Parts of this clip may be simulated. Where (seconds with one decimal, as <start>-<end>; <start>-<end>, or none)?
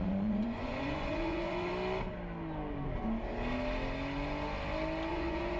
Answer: 0.0-1.7; 5.1-5.6